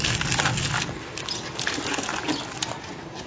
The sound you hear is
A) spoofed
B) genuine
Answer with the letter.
B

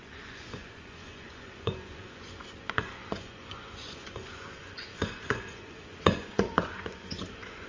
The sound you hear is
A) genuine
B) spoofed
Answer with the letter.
B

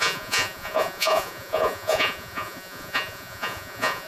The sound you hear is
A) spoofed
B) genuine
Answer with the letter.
A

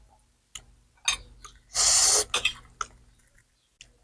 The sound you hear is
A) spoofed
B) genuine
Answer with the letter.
B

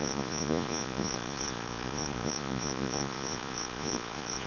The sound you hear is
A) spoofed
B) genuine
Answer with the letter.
A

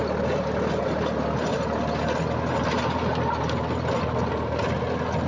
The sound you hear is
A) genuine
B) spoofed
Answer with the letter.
A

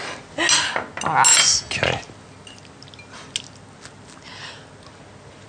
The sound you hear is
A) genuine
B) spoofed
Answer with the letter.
A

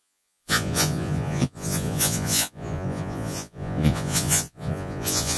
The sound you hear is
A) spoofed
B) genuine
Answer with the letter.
A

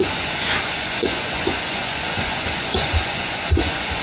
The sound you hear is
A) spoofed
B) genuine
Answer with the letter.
A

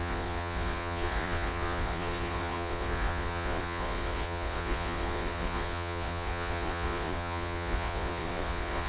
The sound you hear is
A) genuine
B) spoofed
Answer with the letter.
B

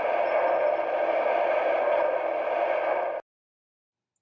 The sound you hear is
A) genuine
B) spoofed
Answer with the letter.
A